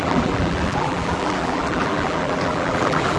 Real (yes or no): no